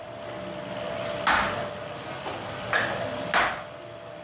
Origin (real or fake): real